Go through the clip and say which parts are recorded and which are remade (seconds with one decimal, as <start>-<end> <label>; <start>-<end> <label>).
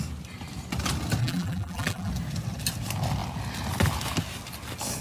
0.0-1.2 recorded; 1.2-2.1 remade; 2.1-5.0 recorded